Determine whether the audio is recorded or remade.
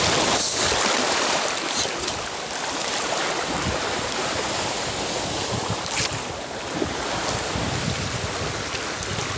recorded